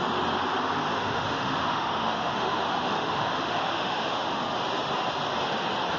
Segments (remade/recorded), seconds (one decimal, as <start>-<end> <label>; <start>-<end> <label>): 0.0-1.0 recorded; 1.0-4.4 remade; 4.4-6.0 recorded